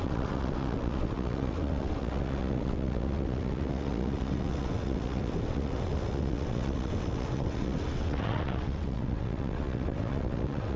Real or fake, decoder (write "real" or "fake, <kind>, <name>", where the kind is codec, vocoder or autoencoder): fake, vocoder, WaveNeXt